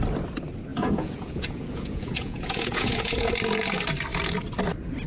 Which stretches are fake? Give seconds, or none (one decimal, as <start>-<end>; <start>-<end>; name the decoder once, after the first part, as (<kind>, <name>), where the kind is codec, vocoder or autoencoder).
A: 0.7-3.3 (vocoder, Vocos)